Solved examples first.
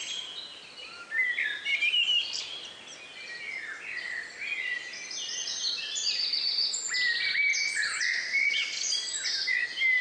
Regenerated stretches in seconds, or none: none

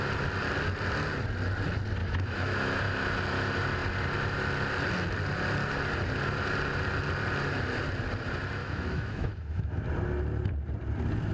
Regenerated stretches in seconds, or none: 2.0-2.8; 8.6-9.8

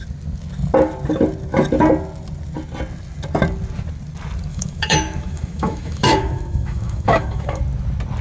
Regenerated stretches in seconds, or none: 4.5-7.6